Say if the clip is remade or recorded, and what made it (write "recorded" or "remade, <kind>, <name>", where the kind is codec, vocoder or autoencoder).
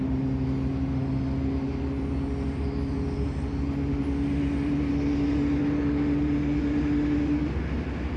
recorded